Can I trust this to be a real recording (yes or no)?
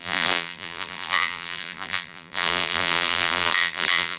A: no